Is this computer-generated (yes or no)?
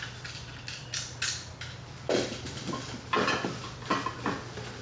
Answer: no